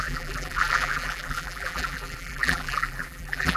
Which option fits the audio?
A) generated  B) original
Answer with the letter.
A